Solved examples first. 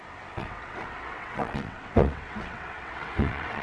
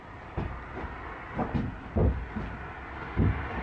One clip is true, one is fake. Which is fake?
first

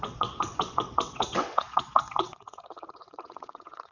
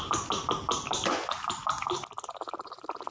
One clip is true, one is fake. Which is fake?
first